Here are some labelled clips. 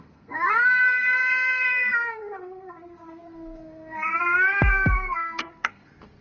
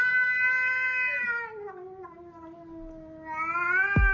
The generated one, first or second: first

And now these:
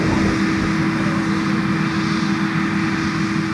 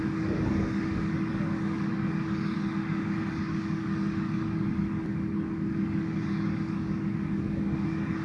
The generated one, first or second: second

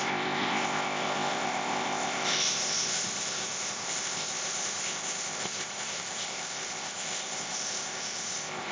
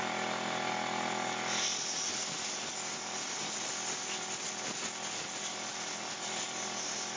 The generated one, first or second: first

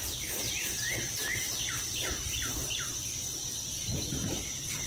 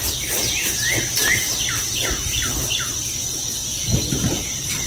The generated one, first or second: first